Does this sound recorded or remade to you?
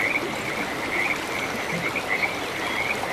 recorded